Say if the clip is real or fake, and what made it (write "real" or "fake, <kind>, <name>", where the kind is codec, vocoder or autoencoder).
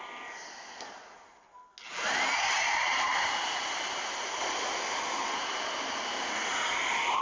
real